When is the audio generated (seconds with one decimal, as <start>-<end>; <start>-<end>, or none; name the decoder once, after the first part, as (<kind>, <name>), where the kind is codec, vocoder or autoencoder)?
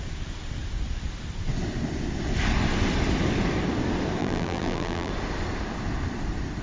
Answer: 4.2-5.1 (vocoder, BigVGAN v2)